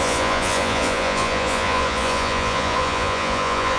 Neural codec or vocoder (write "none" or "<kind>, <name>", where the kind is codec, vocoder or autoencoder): vocoder, Vocos